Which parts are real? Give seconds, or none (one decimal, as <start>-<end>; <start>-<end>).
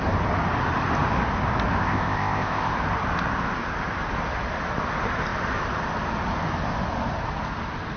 0.0-1.8; 2.7-8.0